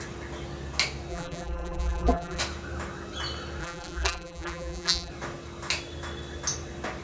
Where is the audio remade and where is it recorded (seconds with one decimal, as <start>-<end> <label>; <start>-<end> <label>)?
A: 0.0-1.1 recorded; 1.1-2.4 remade; 2.4-3.6 recorded; 3.6-5.1 remade; 5.1-7.0 recorded